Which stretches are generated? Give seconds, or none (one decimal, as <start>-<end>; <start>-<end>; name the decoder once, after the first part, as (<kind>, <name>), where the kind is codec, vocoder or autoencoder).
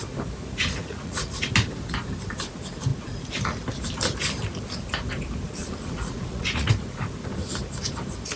0.8-1.4 (vocoder, Vocos); 5.6-6.7